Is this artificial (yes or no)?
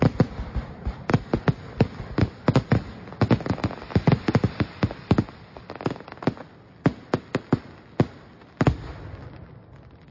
no